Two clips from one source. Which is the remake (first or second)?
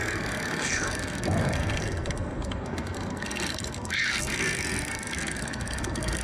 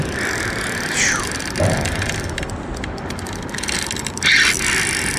first